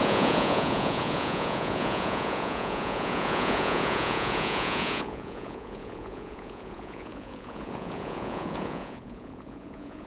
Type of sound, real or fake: fake